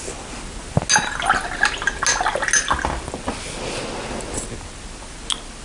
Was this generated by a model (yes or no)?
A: no